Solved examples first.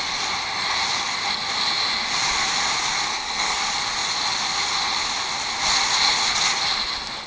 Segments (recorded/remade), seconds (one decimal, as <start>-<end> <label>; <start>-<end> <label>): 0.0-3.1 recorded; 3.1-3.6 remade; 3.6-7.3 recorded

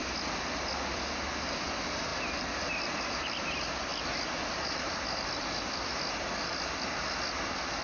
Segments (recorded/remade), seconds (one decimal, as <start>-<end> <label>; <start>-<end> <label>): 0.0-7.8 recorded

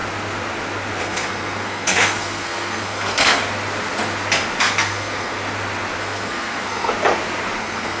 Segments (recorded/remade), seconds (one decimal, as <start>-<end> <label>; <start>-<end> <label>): 0.0-1.0 recorded; 1.0-3.4 remade; 3.4-4.6 recorded; 4.6-5.4 remade; 5.4-6.0 recorded; 6.0-6.9 remade; 6.9-7.6 recorded; 7.6-8.0 remade